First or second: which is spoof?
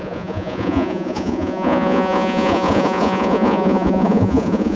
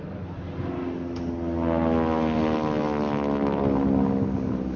first